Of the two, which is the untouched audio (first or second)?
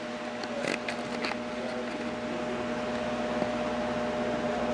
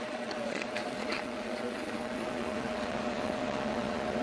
first